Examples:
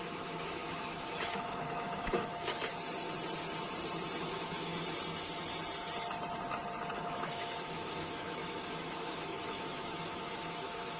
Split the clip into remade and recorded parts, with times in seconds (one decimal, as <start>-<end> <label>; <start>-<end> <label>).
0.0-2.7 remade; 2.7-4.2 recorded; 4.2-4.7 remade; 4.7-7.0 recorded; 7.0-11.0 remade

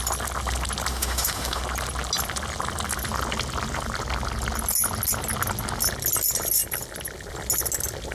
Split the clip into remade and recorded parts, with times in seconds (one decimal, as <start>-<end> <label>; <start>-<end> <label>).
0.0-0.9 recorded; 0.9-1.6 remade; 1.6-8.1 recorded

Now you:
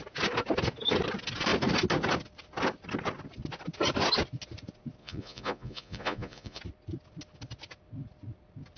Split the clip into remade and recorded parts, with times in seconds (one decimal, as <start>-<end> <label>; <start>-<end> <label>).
0.0-5.0 recorded; 5.0-6.6 remade; 6.6-8.8 recorded

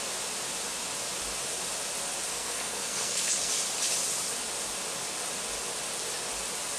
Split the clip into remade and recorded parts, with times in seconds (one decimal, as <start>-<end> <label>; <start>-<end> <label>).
0.0-2.3 recorded; 2.3-3.5 remade; 3.5-6.8 recorded

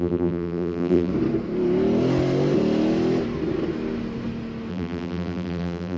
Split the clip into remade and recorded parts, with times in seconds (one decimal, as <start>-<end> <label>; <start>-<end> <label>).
0.0-1.1 remade; 1.1-4.7 recorded; 4.7-6.0 remade

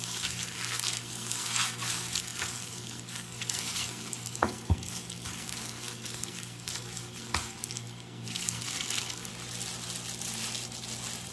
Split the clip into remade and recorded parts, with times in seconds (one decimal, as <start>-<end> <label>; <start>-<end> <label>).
0.0-9.3 remade; 9.3-11.3 recorded

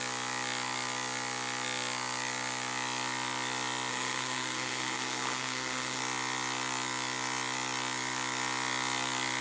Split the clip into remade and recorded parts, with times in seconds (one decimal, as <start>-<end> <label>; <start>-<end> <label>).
0.0-3.9 recorded; 3.9-6.0 remade; 6.0-9.4 recorded

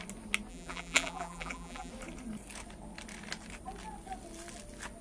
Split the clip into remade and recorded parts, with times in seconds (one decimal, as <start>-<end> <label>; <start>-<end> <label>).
0.0-0.5 recorded; 0.5-1.9 remade; 1.9-5.0 recorded